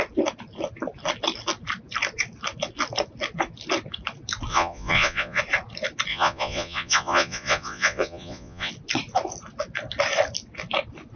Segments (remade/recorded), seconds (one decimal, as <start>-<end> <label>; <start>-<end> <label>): 0.0-4.5 recorded; 4.5-5.4 remade; 5.4-6.1 recorded; 6.1-8.7 remade; 8.7-11.2 recorded